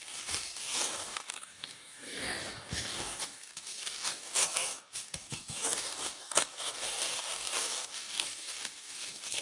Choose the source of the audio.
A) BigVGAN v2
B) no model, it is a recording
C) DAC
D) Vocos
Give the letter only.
C